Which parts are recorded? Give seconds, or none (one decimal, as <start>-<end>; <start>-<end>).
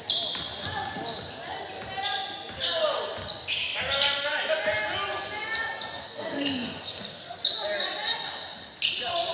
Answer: 0.0-6.0; 7.4-9.3